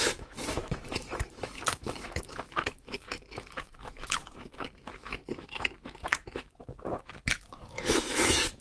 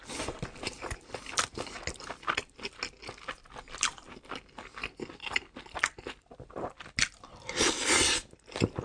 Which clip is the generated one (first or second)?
first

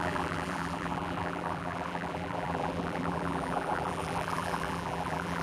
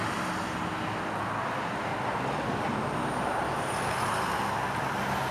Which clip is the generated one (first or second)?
first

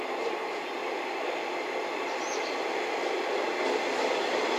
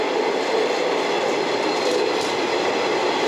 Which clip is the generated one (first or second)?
first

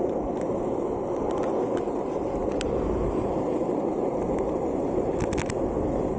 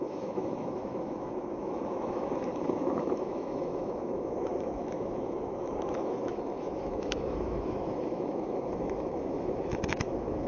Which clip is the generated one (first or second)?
second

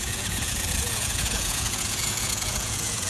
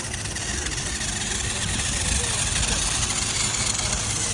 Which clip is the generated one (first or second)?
first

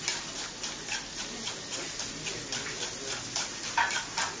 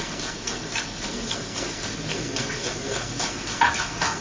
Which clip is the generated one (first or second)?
second